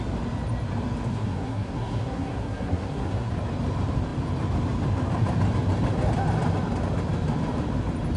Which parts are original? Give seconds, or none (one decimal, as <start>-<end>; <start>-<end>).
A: 0.0-1.1; 3.3-8.2